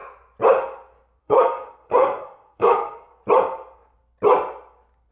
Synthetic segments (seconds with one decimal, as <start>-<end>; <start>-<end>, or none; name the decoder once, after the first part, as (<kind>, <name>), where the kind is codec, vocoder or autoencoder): 1.2-3.1 (codec, SNAC)